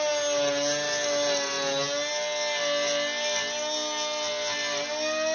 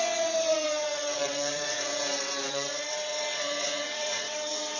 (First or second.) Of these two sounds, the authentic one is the first